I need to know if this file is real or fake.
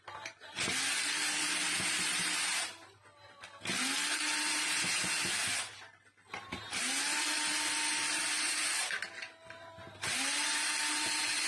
real